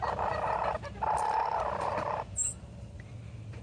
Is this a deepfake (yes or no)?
no